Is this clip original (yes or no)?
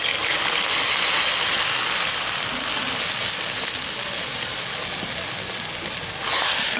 yes